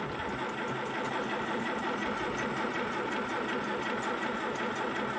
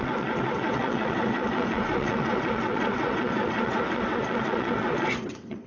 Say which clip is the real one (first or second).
first